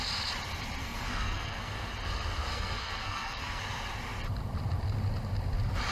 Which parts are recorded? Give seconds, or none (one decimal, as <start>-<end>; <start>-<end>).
0.0-0.8; 1.9-2.5; 3.6-5.9